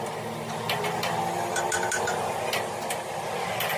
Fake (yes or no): no